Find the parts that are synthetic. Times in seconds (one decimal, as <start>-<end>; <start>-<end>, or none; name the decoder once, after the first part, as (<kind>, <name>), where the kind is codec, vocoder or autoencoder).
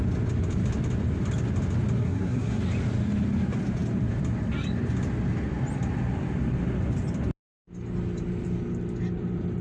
2.0-2.6 (codec, SNAC)